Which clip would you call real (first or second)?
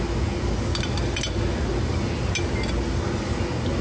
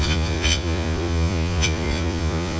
first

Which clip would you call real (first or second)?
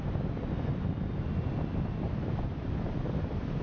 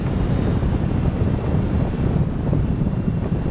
first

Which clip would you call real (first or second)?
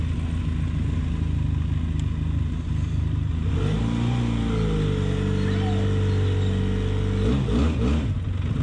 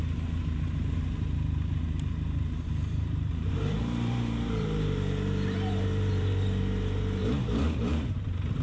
first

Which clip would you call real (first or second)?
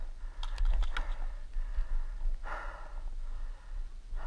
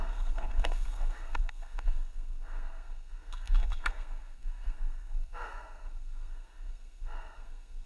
first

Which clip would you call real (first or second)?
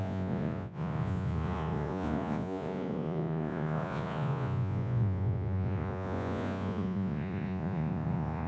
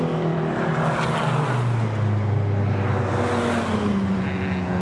second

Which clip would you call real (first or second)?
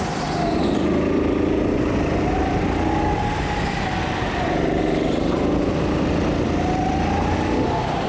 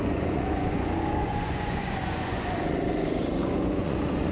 first